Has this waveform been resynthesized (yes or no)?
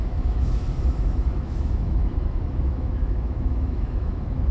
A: yes